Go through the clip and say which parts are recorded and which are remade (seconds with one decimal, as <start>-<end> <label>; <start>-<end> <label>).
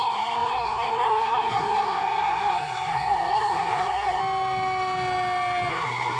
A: 0.0-4.2 remade; 4.2-5.7 recorded; 5.7-6.2 remade